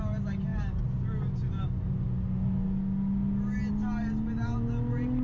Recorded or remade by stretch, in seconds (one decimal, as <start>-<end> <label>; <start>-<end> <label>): 0.0-5.2 recorded